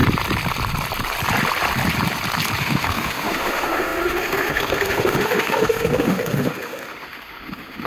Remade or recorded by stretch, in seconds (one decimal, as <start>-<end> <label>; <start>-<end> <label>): 0.0-2.6 recorded; 2.6-7.9 remade